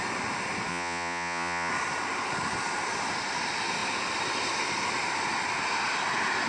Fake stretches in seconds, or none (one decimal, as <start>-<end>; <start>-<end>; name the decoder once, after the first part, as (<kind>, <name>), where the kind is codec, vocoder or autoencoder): 0.7-1.7 (vocoder, Vocos)